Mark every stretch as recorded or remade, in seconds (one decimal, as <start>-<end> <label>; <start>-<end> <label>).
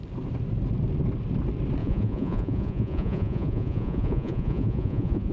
0.0-1.8 recorded; 1.8-5.3 remade